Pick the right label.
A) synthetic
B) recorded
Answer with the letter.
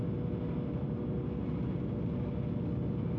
B